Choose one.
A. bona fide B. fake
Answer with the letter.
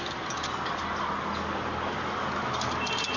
A